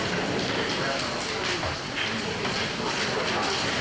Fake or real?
real